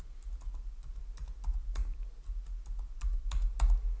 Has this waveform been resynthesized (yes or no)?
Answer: no